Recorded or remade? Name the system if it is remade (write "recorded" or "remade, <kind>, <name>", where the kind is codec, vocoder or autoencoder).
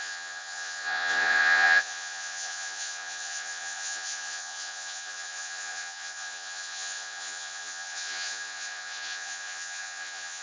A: remade, vocoder, Vocos